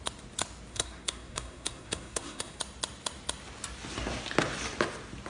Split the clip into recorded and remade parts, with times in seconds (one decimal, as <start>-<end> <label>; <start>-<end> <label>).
0.0-0.7 recorded; 0.7-2.6 remade; 2.6-5.3 recorded